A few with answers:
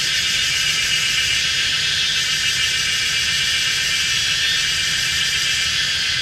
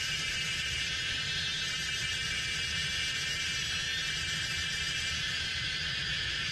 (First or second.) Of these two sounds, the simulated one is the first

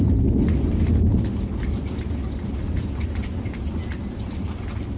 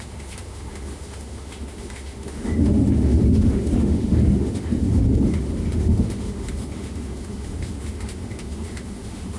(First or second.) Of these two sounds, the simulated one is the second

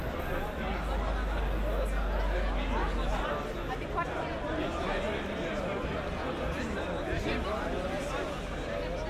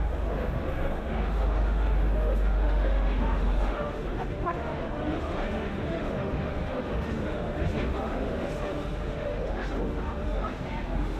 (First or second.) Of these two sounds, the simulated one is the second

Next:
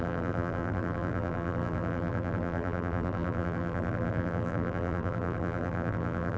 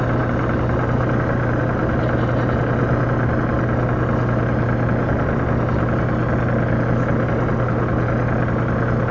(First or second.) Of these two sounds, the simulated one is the first